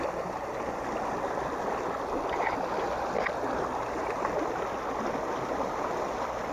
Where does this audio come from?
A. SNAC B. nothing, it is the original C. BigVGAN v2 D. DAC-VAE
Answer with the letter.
B